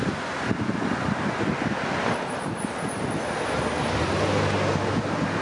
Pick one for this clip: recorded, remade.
recorded